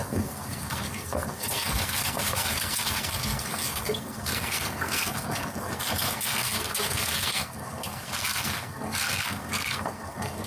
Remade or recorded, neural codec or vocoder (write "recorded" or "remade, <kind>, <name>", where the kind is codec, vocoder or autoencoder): remade, codec, SNAC